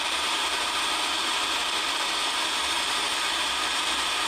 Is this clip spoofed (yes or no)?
no